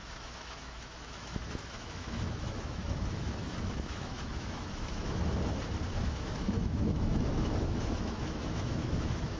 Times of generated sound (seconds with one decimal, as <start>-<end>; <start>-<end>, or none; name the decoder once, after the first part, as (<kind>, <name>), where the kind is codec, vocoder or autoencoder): 0.0-5.2 (autoencoder, DAC-VAE); 5.9-9.4

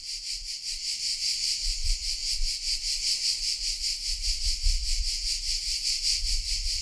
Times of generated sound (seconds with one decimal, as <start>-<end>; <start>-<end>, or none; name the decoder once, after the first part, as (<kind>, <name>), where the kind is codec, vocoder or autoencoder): none

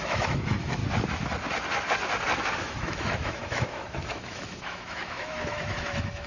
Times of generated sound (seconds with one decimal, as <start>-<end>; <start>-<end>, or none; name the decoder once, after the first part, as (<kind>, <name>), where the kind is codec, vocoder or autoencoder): 0.0-0.8 (autoencoder, DAC-VAE); 2.6-6.3